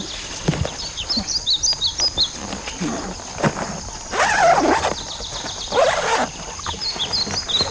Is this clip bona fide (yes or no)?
yes